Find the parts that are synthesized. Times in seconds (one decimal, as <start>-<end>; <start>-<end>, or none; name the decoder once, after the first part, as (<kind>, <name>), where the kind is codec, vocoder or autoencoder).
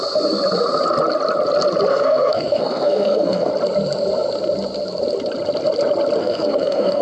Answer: 1.9-3.5 (codec, SNAC); 6.2-7.0